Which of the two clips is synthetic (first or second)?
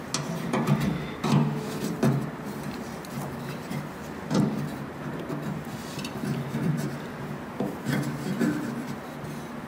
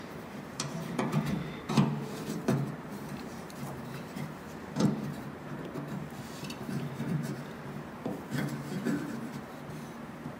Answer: second